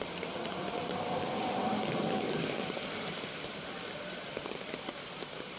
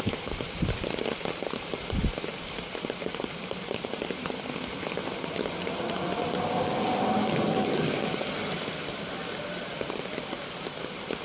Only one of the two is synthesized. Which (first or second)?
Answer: first